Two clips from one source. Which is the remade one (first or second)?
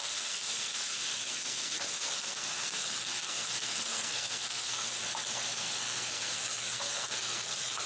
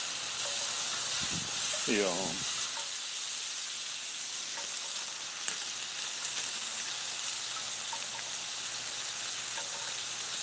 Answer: first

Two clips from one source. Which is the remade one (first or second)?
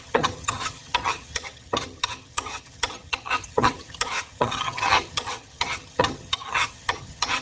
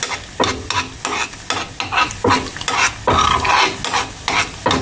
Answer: first